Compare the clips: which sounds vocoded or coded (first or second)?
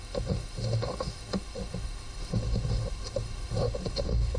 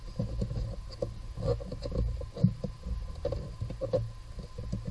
first